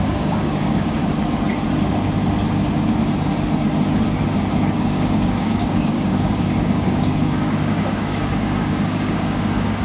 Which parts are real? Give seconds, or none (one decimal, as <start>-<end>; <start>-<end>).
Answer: 1.0-4.5